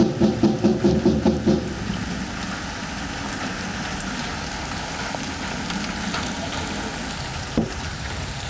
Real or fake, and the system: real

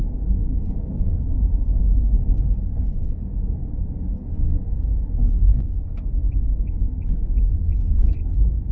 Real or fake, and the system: real